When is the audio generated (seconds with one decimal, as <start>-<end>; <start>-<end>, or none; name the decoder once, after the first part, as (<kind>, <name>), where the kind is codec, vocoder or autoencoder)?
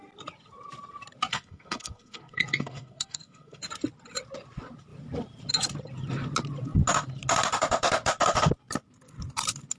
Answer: 1.3-3.6 (codec, SNAC)